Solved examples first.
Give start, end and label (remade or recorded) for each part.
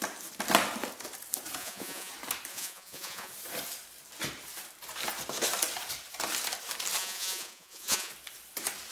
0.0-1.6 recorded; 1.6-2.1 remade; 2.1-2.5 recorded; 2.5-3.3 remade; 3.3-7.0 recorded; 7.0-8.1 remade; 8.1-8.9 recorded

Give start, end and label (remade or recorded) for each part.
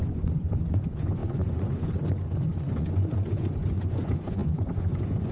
0.0-5.3 remade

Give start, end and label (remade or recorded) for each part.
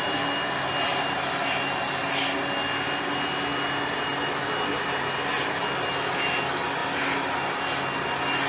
0.0-8.5 recorded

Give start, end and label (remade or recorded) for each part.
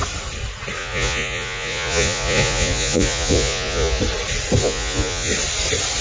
0.0-0.8 recorded; 0.8-4.0 remade; 4.0-4.6 recorded; 4.6-5.3 remade; 5.3-6.0 recorded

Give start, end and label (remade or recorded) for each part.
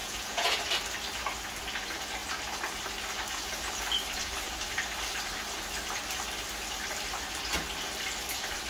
0.0-0.6 remade; 0.6-8.7 recorded